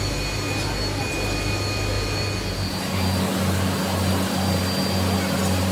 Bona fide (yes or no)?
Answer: yes